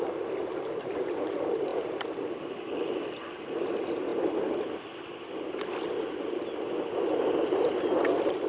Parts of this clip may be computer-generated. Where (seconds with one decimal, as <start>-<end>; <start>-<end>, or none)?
none